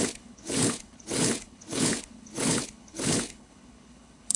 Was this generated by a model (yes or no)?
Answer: yes